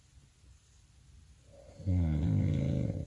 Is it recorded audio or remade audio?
recorded